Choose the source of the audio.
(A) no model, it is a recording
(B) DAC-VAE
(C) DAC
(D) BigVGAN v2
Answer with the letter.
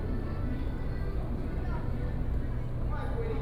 A